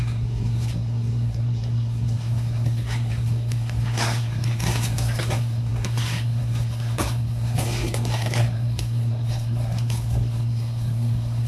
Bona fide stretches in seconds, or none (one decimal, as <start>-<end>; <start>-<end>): none